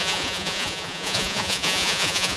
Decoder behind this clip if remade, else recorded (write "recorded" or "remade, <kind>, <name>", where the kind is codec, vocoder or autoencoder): remade, vocoder, Vocos